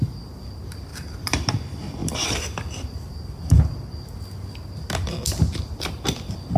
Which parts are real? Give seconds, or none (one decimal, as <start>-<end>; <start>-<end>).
0.0-0.9; 1.5-2.0; 3.5-6.6